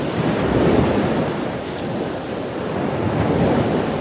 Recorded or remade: recorded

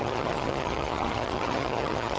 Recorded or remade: remade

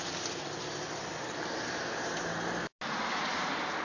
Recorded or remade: recorded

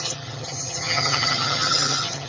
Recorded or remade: remade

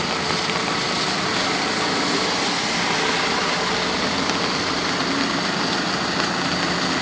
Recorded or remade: recorded